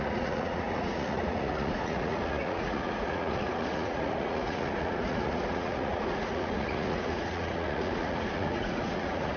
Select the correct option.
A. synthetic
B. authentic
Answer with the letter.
A